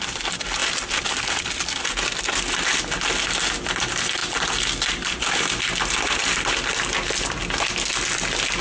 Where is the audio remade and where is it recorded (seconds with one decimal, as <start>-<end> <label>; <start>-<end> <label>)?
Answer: 0.0-8.6 recorded